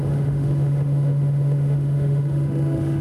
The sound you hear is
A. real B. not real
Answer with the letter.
B